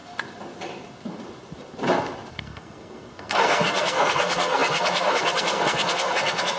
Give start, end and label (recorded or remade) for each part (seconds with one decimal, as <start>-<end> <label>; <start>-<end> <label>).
0.0-2.3 recorded; 2.3-6.6 remade